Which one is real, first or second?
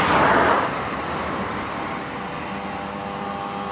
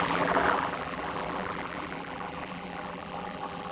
first